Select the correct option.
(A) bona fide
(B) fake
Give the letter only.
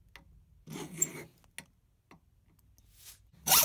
A